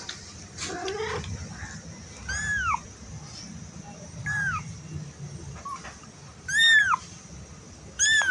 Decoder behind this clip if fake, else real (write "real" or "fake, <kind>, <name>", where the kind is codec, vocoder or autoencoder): real